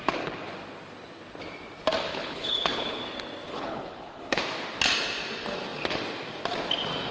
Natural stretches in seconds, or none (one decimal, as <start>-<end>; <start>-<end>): 0.0-2.1; 3.0-3.5; 4.4-7.1

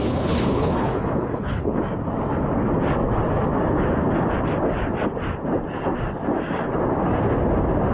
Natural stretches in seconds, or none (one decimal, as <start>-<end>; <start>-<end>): 1.8-7.9

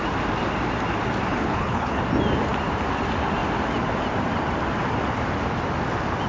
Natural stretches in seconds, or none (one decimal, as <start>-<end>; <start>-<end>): 0.0-1.3; 2.0-6.3

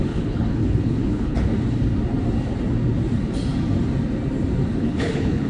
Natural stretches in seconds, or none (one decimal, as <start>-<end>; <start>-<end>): 1.5-4.8

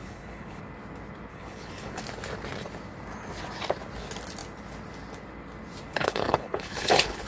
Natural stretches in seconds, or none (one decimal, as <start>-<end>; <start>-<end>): 0.6-1.3; 2.0-5.9

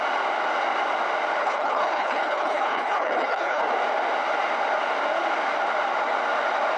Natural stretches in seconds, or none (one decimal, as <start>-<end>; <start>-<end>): 0.0-1.4; 3.6-6.8

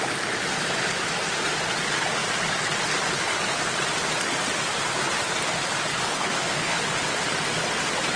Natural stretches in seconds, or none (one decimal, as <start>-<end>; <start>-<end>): 0.0-5.9; 6.8-8.2